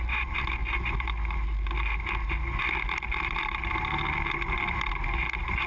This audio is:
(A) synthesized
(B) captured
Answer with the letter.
B